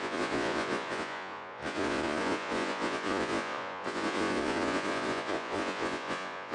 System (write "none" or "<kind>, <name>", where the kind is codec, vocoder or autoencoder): vocoder, Vocos